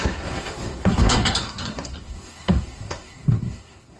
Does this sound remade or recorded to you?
remade